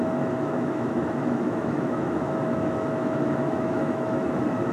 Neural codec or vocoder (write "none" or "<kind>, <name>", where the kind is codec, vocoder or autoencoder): autoencoder, DAC-VAE